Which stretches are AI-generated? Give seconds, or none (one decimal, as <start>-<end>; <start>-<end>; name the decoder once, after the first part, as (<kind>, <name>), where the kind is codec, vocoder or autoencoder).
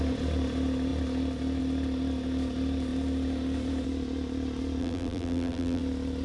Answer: 4.8-5.8 (vocoder, BigVGAN v2)